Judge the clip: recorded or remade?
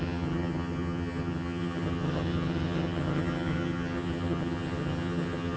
remade